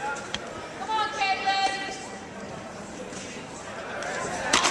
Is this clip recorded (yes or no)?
no